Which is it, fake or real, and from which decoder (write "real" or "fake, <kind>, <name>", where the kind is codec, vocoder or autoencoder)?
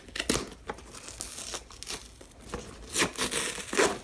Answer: real